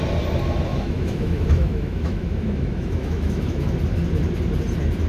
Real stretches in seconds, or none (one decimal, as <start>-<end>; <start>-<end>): 0.0-0.7; 3.8-5.1